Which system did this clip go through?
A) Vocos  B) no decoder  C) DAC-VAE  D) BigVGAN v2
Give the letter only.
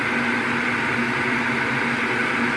B